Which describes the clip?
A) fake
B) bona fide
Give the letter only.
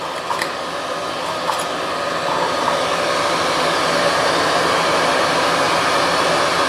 B